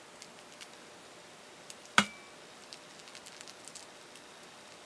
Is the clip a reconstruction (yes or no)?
no